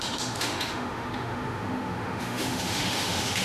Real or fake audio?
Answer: fake